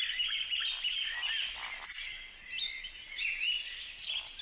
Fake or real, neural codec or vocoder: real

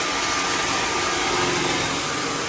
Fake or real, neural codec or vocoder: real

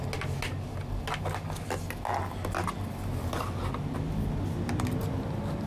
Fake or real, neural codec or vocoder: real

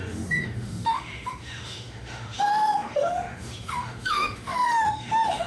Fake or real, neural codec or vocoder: fake, autoencoder, DAC-VAE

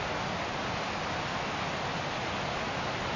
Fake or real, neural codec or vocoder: real